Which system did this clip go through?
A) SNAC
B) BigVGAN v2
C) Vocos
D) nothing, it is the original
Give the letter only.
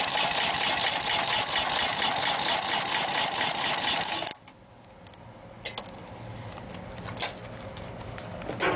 D